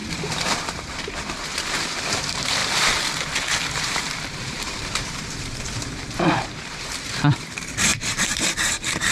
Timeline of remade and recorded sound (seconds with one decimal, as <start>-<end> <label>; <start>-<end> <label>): 0.0-2.6 remade; 2.6-4.0 recorded; 4.0-9.1 remade